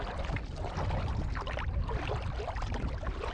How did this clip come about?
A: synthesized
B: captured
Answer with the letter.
B